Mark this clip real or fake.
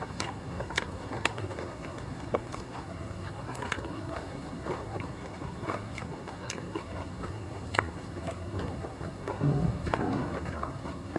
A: fake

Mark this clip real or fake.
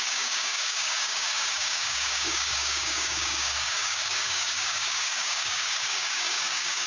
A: fake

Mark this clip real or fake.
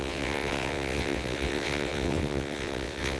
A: fake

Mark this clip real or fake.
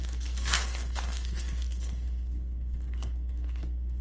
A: fake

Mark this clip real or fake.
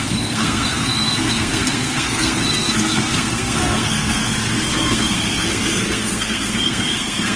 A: fake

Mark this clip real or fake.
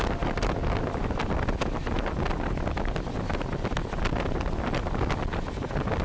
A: real